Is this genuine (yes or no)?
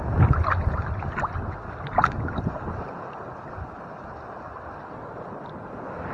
yes